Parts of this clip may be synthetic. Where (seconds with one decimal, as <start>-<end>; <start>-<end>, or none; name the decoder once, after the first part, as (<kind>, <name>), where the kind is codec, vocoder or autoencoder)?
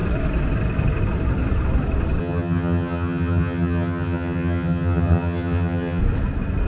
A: 2.2-6.0 (vocoder, HiFi-GAN)